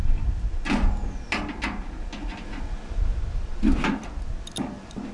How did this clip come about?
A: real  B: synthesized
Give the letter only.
A